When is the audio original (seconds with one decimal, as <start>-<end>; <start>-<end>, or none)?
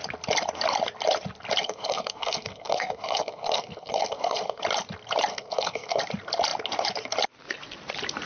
0.0-1.6; 4.6-5.3; 6.0-8.3